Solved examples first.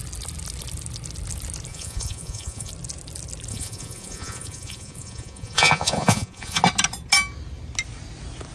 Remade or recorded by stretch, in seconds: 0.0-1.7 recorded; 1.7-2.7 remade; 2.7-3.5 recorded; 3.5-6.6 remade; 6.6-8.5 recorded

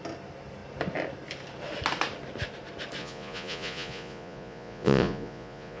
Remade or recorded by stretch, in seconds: 0.0-3.0 recorded; 3.0-5.8 remade

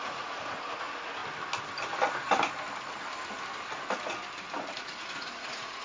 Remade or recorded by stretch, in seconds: 0.0-1.2 remade; 1.2-4.7 recorded; 4.7-5.8 remade

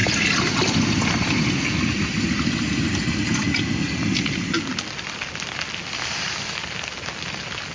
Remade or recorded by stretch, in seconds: 0.0-7.7 recorded